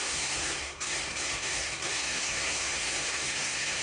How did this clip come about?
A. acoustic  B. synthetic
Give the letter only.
B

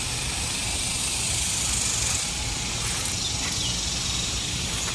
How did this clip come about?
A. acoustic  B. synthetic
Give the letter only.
A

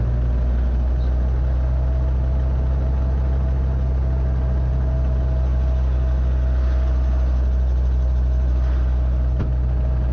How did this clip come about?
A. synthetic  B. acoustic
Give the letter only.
B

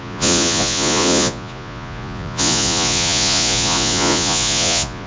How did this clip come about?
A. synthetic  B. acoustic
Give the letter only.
A